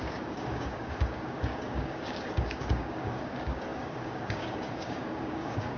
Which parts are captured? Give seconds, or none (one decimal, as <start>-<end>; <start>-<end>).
none